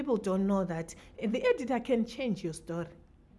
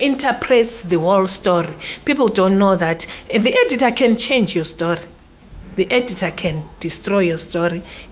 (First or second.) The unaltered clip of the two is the first